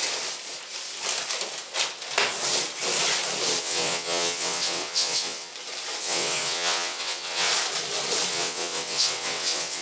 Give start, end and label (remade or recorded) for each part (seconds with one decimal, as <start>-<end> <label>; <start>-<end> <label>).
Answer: 0.0-3.6 recorded; 3.6-5.5 remade; 5.5-6.0 recorded; 6.0-7.5 remade; 7.5-8.3 recorded; 8.3-9.8 remade